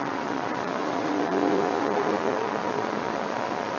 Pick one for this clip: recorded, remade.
remade